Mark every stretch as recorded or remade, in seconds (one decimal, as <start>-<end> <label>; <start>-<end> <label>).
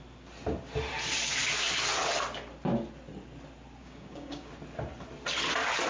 0.0-3.8 recorded; 3.8-4.5 remade; 4.5-5.9 recorded